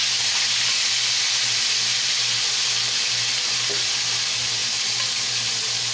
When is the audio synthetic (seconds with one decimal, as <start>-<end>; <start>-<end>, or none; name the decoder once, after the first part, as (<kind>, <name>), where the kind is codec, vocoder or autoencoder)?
none